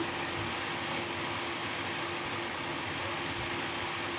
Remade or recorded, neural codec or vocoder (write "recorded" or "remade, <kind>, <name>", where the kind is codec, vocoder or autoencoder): recorded